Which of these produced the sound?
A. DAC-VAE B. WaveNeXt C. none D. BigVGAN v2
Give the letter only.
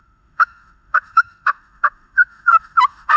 A